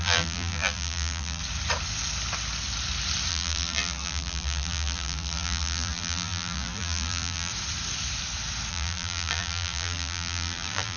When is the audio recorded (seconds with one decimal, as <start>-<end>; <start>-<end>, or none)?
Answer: 1.4-3.3; 7.5-8.7